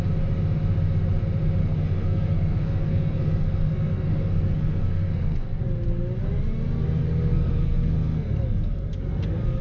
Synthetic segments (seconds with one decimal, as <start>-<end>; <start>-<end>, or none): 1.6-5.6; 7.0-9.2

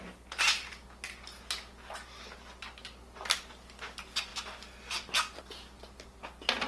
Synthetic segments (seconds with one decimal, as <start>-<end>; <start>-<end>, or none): none

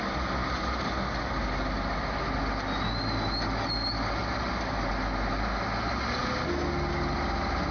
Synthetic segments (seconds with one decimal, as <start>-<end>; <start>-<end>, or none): none

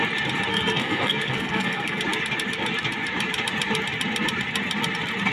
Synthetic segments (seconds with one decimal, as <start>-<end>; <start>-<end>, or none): 0.5-2.0

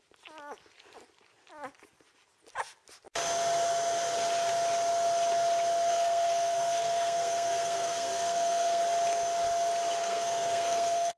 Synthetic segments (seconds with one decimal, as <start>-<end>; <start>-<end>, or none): 5.9-8.8; 10.0-11.2

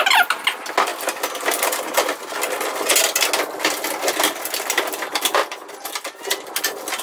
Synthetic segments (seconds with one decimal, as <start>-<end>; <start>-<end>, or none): none

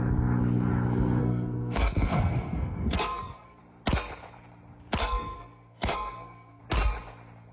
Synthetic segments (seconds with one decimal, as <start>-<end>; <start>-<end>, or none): 1.2-3.6; 5.0-6.6

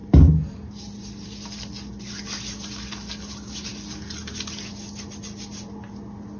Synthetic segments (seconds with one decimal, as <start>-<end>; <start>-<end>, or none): none